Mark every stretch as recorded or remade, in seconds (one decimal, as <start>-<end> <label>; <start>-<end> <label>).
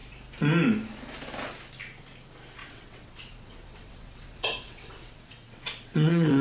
0.0-2.6 recorded; 2.6-6.4 remade